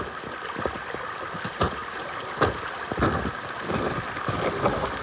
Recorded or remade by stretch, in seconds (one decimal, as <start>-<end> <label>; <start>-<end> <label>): 0.0-5.0 recorded